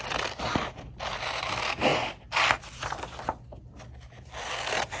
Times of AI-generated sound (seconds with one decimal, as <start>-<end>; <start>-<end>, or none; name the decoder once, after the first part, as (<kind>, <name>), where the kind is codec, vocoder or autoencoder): none